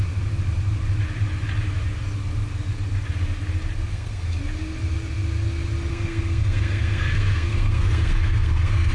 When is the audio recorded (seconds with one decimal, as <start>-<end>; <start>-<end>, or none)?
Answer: 0.0-3.9; 4.4-5.9